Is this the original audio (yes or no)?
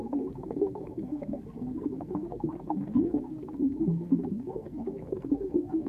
no